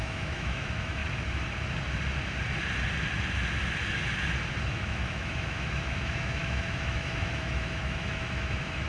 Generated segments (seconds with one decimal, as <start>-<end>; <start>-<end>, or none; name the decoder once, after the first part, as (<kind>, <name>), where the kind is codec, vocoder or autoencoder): 0.0-1.0 (autoencoder, DAC-VAE); 4.7-8.9